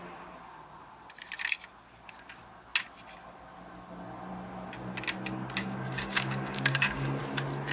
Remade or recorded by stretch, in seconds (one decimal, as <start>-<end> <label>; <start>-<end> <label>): 0.0-5.6 recorded; 5.6-7.2 remade; 7.2-7.7 recorded